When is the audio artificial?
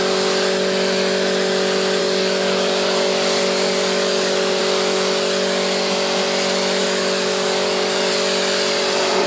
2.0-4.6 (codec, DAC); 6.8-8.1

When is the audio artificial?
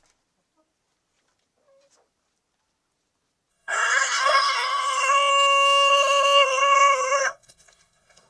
3.5-5.3 (codec, SNAC); 5.9-8.3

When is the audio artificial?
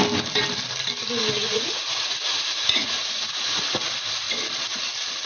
1.4-3.6 (vocoder, Vocos)